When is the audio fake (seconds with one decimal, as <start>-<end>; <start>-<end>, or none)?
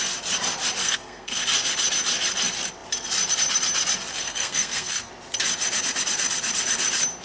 0.8-1.4; 4.1-5.1